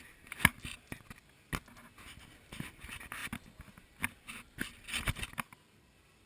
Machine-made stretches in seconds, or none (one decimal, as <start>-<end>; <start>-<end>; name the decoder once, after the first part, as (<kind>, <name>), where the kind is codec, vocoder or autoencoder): none